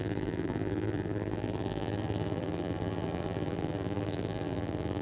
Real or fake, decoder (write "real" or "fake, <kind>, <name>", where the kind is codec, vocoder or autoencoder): fake, vocoder, BigVGAN v2